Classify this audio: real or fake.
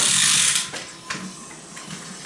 real